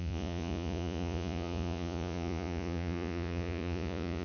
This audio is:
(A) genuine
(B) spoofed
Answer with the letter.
B